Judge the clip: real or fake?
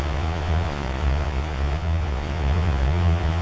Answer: fake